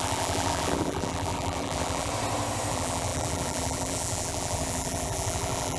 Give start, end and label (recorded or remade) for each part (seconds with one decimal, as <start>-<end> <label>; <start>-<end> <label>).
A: 0.0-2.1 remade; 2.1-2.7 recorded; 2.7-5.8 remade